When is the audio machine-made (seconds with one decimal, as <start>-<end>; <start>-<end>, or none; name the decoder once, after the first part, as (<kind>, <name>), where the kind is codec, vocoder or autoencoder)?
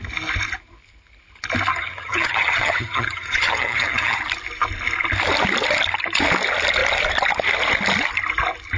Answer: 1.7-4.2 (vocoder, HiFi-GAN)